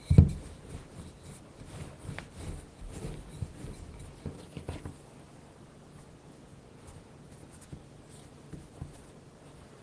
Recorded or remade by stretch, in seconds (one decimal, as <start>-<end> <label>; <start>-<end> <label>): 0.0-6.5 recorded; 6.5-7.2 remade; 7.2-9.8 recorded